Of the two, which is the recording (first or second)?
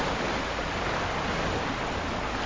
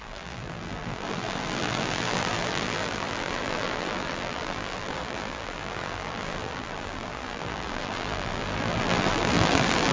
first